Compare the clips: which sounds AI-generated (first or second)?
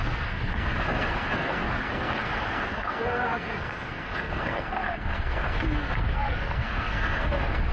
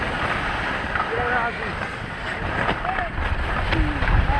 first